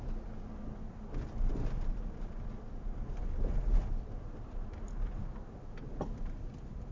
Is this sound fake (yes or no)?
no